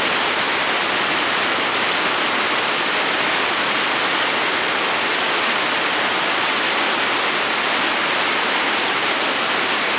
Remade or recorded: recorded